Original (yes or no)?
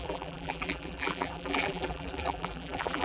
no